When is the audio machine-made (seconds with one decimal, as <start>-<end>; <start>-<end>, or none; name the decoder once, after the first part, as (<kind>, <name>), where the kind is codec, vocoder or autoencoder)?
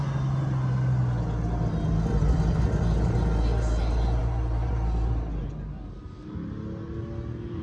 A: 4.2-4.7 (vocoder, BigVGAN v2)